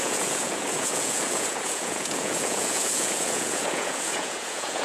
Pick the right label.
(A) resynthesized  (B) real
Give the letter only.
A